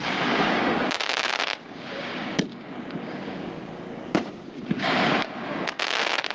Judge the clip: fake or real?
fake